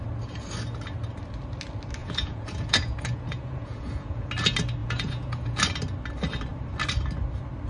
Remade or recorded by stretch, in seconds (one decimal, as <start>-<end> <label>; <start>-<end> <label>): 0.0-2.0 recorded; 2.0-4.3 remade; 4.3-4.8 recorded; 4.8-5.6 remade; 5.6-7.7 recorded